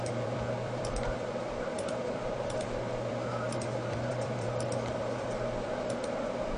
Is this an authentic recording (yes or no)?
no